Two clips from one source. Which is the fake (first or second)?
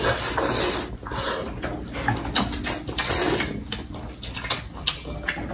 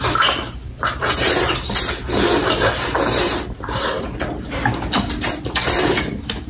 second